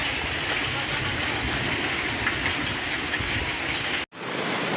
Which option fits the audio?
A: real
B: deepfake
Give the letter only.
A